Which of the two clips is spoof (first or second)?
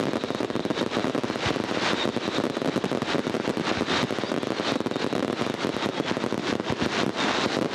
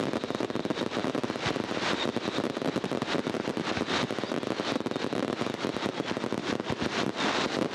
second